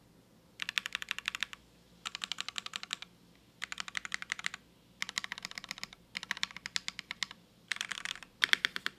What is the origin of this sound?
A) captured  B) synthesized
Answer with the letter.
A